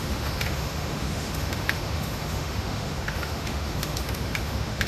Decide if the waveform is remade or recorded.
remade